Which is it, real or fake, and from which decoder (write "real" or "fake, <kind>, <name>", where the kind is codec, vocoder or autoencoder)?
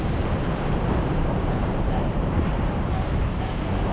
fake, vocoder, BigVGAN v2